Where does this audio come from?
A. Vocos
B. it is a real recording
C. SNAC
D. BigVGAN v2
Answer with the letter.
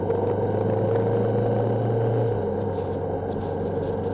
B